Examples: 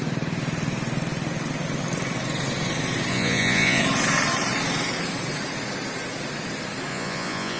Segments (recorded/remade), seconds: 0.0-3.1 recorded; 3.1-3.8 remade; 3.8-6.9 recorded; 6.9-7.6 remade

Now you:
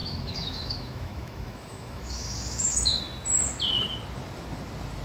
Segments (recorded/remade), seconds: 0.0-3.0 remade; 3.0-5.0 recorded